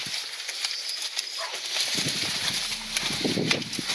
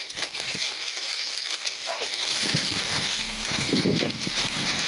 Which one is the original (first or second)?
first